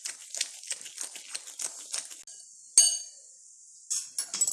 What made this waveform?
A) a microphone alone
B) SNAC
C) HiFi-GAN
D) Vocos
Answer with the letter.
A